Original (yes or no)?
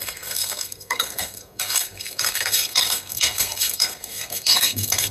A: no